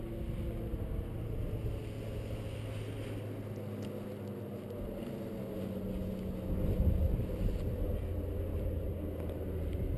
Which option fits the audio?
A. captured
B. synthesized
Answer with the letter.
A